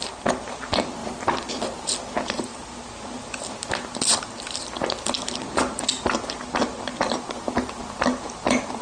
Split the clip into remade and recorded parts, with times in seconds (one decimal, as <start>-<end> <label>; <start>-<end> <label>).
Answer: 0.0-8.8 recorded